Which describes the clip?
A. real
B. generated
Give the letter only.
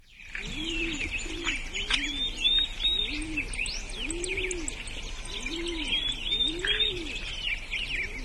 A